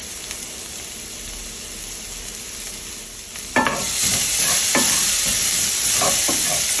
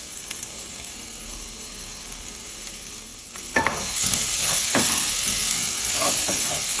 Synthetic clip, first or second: second